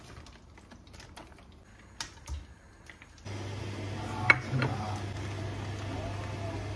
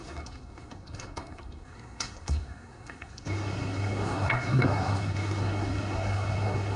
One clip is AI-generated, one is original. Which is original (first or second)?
first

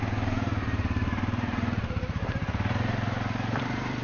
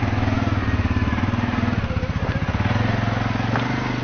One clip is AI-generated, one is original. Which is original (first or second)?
second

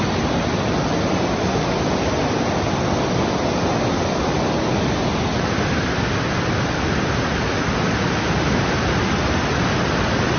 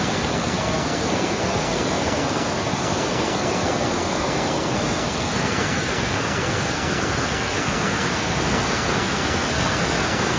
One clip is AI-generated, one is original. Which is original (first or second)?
first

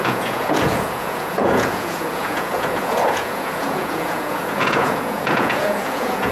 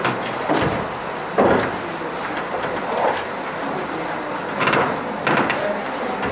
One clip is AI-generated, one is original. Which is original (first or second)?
second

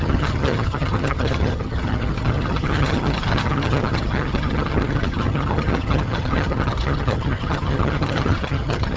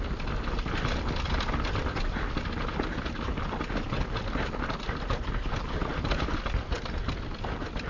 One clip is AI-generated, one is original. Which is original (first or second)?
second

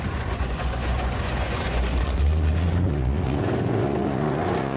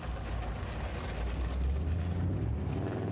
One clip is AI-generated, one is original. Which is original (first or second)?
second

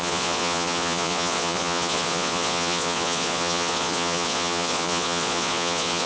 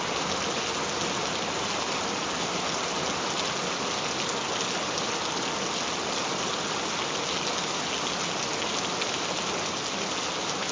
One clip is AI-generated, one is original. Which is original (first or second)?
second